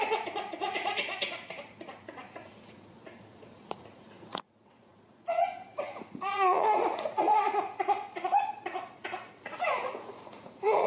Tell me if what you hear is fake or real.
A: fake